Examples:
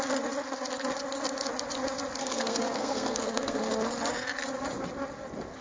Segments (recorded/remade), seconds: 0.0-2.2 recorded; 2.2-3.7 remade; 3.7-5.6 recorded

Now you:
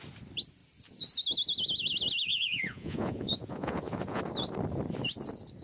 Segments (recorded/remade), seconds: 0.0-2.3 recorded; 2.3-4.2 remade; 4.2-5.6 recorded